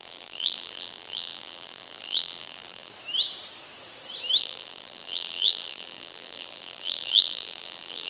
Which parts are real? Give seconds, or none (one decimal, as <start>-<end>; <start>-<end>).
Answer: 2.9-4.4